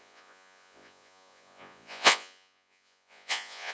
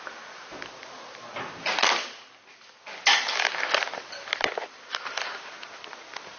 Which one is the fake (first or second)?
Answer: first